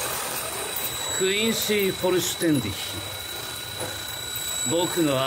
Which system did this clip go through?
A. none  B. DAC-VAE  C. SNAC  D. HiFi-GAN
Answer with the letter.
A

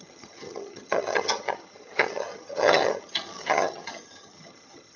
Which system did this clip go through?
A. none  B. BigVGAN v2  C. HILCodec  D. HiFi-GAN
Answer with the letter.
D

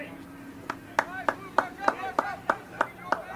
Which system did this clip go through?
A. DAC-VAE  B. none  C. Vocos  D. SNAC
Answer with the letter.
B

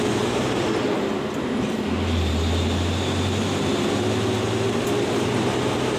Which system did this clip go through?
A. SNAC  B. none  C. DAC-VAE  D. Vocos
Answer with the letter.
B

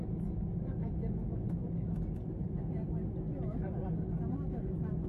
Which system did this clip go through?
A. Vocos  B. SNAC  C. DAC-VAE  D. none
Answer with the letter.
D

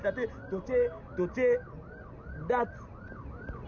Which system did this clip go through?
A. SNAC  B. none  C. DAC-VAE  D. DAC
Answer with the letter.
B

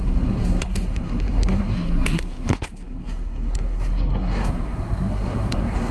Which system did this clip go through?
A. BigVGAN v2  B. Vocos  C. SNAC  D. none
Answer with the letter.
C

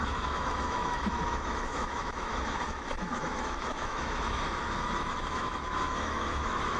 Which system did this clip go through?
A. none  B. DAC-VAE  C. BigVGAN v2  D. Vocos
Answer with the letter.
B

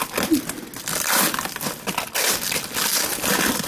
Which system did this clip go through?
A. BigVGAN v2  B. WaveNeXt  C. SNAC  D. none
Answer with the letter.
D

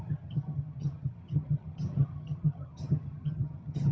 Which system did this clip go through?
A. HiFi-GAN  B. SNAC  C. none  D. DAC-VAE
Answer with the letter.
A